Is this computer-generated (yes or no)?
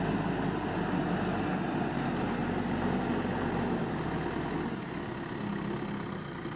no